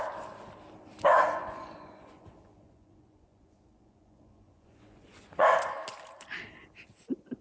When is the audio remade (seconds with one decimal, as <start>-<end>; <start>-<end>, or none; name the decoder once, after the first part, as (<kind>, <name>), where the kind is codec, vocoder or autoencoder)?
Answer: 1.1-5.5 (vocoder, Vocos)